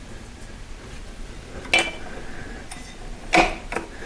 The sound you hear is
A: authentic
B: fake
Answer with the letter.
A